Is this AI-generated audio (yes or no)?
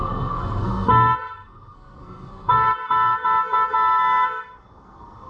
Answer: yes